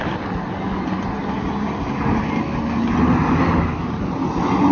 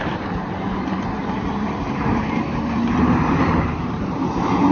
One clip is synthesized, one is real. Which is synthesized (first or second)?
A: second